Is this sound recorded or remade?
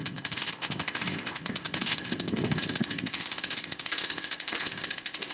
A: remade